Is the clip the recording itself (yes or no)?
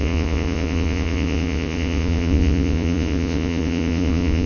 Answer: no